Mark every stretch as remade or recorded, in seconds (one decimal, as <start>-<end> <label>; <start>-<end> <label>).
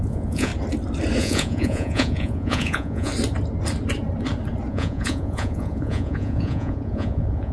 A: 0.0-0.5 remade; 0.5-1.2 recorded; 1.2-3.1 remade; 3.1-4.7 recorded; 4.7-7.5 remade